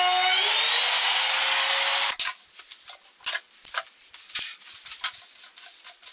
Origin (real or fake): real